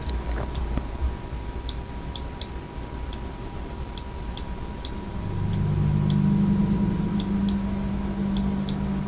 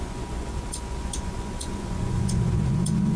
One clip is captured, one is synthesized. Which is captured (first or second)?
first